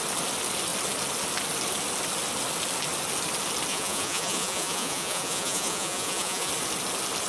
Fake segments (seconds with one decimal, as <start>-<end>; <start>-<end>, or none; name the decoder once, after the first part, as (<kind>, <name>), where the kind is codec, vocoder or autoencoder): 3.7-6.5 (vocoder, Vocos)